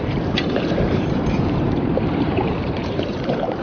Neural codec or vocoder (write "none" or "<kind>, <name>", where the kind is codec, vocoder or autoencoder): vocoder, BigVGAN v2